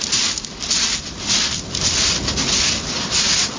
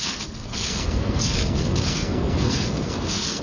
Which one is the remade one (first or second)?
second